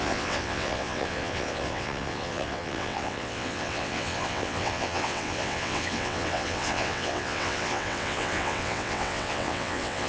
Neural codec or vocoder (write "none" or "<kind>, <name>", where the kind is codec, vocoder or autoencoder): vocoder, WaveNeXt